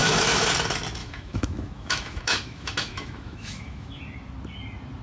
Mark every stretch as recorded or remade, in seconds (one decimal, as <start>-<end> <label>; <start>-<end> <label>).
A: 0.0-0.5 remade; 0.5-1.0 recorded; 1.0-4.0 remade; 4.0-5.0 recorded